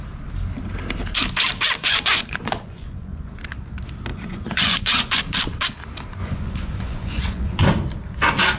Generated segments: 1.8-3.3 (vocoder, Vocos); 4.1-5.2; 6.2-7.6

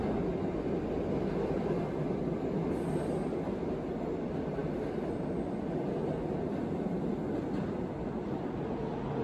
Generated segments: none